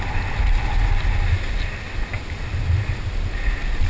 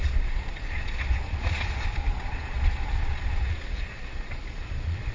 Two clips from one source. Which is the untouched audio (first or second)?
first